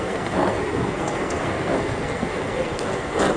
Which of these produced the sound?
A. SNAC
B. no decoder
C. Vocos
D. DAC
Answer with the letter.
A